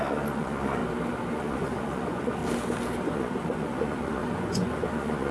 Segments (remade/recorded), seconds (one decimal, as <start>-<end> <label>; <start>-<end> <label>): 0.0-0.8 remade; 0.8-1.3 recorded; 1.3-2.4 remade; 2.4-3.0 recorded; 3.0-5.3 remade